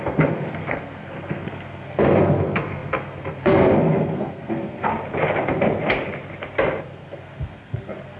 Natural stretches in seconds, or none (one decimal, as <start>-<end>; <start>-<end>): 4.9-6.8